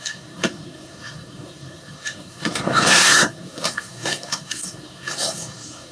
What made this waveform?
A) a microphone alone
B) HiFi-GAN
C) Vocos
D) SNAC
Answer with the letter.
D